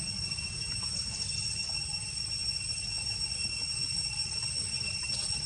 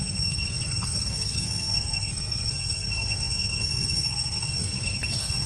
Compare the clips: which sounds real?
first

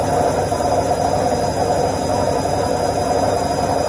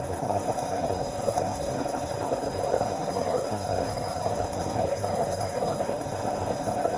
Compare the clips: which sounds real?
first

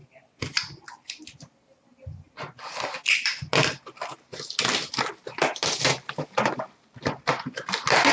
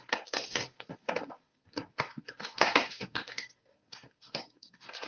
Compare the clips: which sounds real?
first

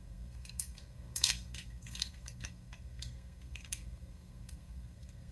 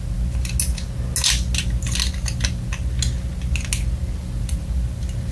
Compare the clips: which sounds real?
second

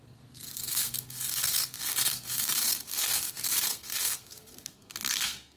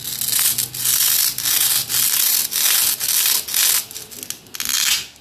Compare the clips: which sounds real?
second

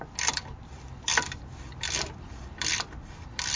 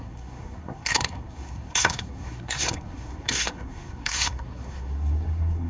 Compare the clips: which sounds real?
first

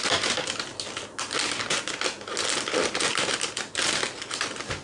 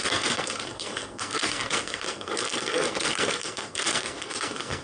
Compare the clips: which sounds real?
first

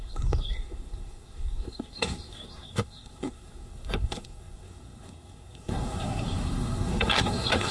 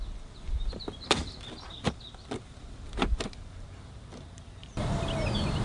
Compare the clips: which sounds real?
second